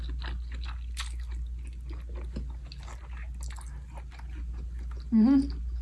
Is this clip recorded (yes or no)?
yes